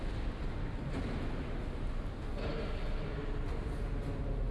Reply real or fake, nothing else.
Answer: real